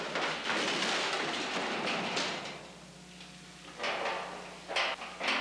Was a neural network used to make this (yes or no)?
no